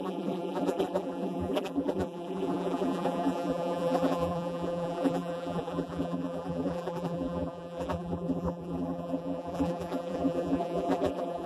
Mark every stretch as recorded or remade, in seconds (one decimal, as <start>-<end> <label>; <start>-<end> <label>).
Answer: 0.0-11.5 remade